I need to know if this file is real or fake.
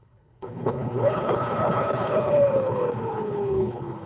fake